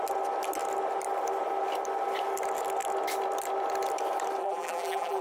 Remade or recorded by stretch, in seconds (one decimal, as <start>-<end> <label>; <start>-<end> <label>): 0.0-4.4 recorded; 4.4-5.2 remade